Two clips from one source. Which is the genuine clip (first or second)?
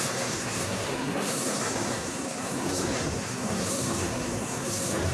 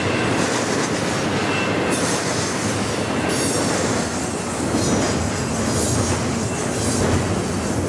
second